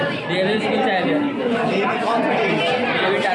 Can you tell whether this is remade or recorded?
recorded